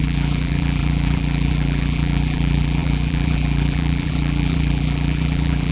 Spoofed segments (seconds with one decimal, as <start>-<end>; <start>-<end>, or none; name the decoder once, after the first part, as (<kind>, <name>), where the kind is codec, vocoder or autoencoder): 0.0-5.7 (vocoder, BigVGAN v2)